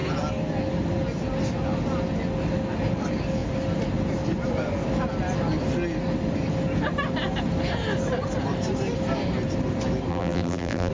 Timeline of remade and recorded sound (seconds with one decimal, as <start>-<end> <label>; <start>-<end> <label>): 0.0-10.1 recorded; 10.1-10.9 remade